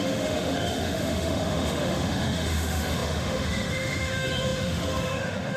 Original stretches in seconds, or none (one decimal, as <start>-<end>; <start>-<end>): none